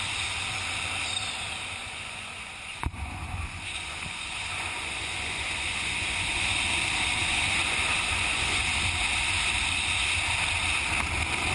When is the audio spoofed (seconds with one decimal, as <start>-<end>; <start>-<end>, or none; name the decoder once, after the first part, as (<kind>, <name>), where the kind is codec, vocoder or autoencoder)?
1.8-6.6 (vocoder, Vocos); 7.2-8.6